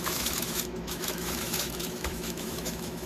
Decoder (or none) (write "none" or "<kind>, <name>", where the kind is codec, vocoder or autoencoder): autoencoder, DAC-VAE